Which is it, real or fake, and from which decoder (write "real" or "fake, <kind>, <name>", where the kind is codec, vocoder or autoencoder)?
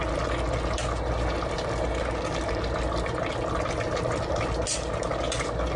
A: real